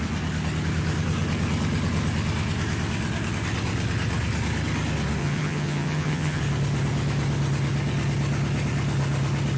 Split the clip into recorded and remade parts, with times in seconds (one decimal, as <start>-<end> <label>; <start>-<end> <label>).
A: 0.0-5.2 recorded; 5.2-6.4 remade; 6.4-9.6 recorded